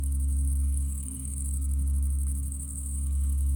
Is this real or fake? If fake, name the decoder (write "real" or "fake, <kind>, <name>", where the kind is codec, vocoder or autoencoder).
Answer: fake, codec, DAC